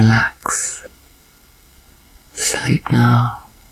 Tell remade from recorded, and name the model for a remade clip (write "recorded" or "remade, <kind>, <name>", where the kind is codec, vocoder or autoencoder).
remade, codec, SNAC